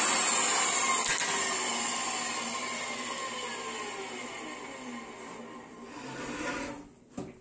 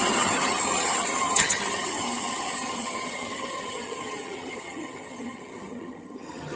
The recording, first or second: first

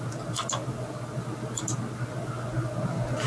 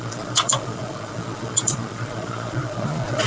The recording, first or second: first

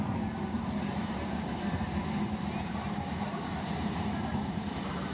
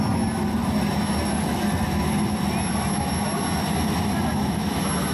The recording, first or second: second